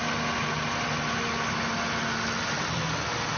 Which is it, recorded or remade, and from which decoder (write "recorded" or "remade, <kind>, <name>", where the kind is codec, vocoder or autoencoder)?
recorded